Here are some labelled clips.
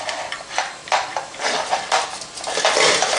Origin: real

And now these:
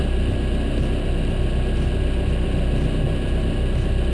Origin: real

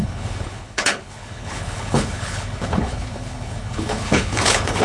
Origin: fake